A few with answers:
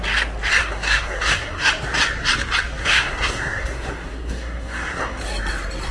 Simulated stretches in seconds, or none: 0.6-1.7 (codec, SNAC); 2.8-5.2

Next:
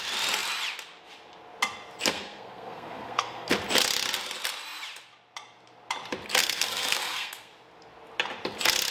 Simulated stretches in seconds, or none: 2.1-3.5 (codec, SNAC); 6.4-7.5

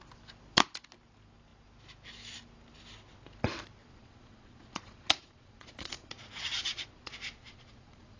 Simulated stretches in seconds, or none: 3.8-8.2 (vocoder, Vocos)

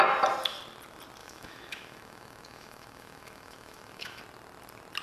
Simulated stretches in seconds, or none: 1.2-4.2 (autoencoder, DAC-VAE)

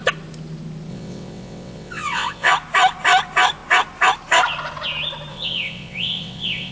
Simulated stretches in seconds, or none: 0.9-2.5 (vocoder, WaveNeXt); 5.3-6.7

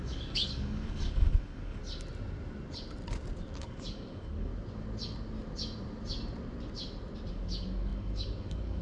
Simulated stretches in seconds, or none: 0.0-1.8 (codec, DAC); 3.6-4.5; 7.3-8.8